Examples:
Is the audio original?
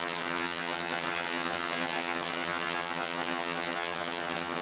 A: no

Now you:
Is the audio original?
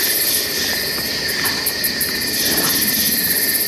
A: yes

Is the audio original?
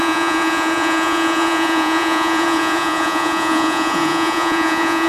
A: no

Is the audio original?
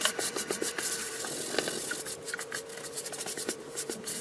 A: yes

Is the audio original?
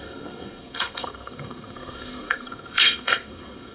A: no